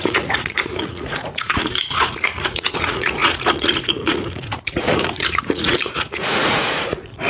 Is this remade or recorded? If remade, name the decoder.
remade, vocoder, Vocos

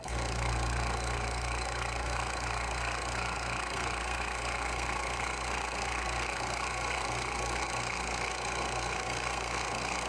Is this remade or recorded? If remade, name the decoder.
remade, codec, SNAC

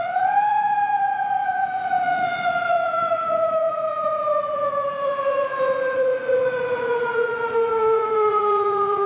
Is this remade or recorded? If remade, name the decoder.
remade, vocoder, Vocos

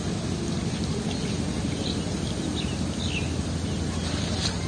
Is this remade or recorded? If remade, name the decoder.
recorded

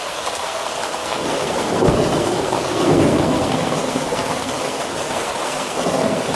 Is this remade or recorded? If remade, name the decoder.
remade, codec, SNAC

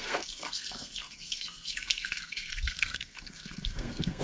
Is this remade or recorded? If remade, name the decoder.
remade, codec, SNAC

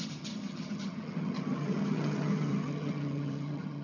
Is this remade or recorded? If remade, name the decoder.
remade, vocoder, HiFi-GAN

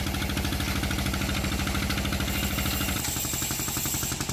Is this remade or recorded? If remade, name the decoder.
recorded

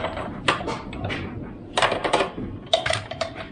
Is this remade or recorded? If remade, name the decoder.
remade, vocoder, BigVGAN v2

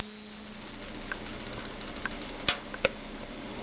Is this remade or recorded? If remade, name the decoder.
recorded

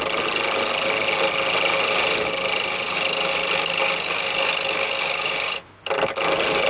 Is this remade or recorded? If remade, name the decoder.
recorded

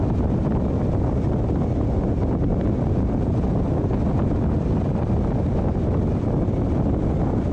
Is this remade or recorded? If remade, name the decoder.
recorded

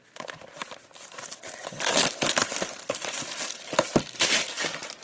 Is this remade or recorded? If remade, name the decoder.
remade, vocoder, BigVGAN v2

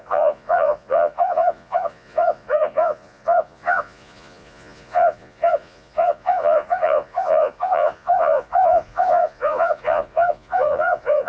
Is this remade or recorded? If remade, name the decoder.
remade, vocoder, Vocos